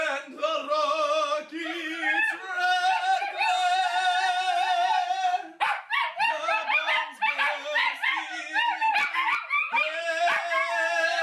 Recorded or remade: recorded